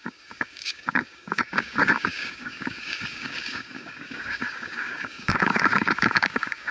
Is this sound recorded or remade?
remade